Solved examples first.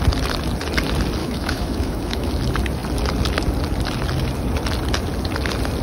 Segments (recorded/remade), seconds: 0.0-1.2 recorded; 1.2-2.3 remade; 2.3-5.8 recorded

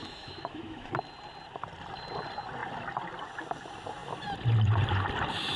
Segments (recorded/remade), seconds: 0.0-0.9 remade; 0.9-5.6 recorded